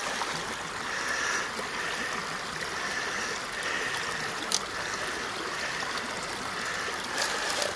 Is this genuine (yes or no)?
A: yes